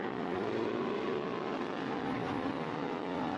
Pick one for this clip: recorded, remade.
remade